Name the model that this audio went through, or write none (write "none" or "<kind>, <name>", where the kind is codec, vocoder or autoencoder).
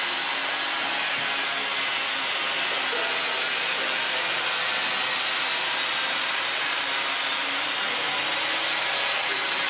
none